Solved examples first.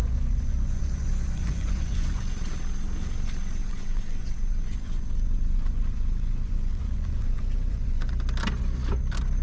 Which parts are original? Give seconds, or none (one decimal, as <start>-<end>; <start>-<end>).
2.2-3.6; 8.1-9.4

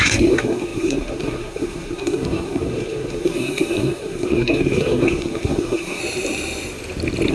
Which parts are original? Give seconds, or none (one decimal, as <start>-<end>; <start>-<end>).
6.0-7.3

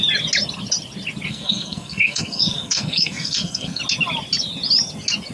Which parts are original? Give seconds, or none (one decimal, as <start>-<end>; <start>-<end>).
0.0-1.3; 3.8-5.3

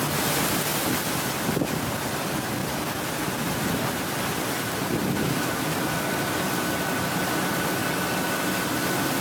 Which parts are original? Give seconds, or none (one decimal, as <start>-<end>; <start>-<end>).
0.0-9.2

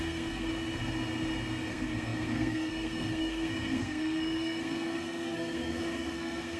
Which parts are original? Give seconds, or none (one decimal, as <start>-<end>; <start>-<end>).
0.5-1.7

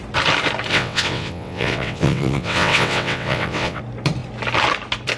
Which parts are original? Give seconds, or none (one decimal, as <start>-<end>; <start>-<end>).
0.0-0.7; 3.8-5.2